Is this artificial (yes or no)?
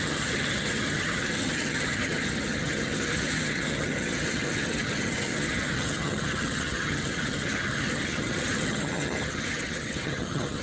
yes